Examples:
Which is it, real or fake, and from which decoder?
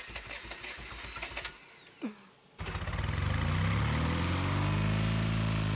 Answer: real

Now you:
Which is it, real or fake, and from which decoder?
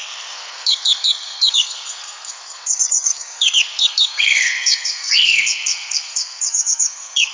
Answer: fake, codec, SNAC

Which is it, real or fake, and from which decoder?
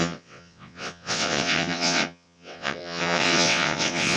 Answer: fake, vocoder, WaveNeXt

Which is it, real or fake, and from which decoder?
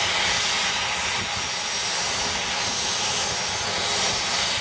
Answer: real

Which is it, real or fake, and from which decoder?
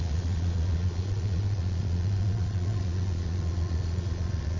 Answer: fake, vocoder, Vocos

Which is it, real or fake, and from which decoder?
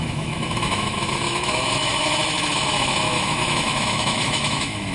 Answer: fake, autoencoder, DAC-VAE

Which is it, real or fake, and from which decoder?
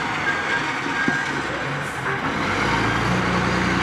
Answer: real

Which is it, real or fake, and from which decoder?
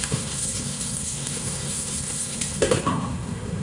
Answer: fake, codec, SNAC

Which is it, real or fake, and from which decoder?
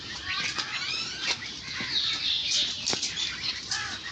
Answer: real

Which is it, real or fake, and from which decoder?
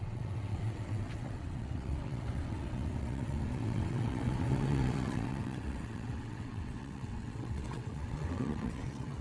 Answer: fake, vocoder, WaveNeXt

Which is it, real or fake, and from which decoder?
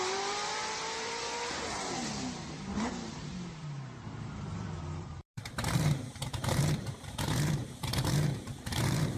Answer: fake, vocoder, BigVGAN v2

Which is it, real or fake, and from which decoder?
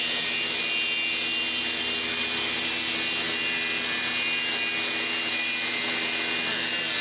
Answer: real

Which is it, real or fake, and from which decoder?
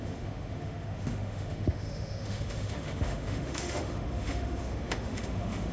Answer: fake, autoencoder, DAC-VAE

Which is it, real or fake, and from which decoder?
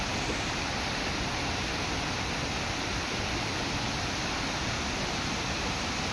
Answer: real